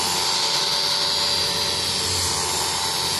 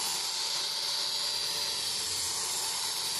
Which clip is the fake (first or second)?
second